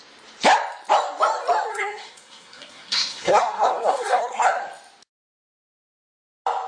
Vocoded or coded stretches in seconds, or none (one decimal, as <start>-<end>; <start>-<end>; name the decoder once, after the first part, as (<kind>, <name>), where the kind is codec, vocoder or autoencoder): 1.7-4.6 (codec, SNAC)